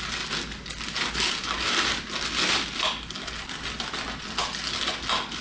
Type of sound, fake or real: real